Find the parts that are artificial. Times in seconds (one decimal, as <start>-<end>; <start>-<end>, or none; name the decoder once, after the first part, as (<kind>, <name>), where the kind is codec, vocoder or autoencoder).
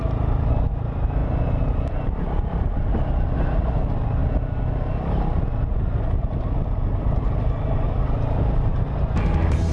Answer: none